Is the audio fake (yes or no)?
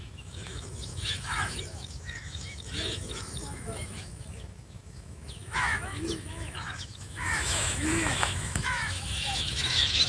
yes